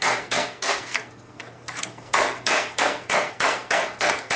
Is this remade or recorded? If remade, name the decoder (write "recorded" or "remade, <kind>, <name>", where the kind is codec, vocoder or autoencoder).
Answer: remade, codec, SNAC